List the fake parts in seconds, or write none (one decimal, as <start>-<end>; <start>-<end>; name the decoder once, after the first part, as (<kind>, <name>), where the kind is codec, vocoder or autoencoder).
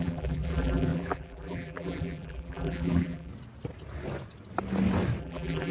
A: 0.0-3.3 (vocoder, BigVGAN v2); 5.2-5.7